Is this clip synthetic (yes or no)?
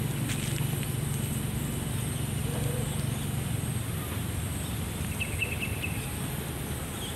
no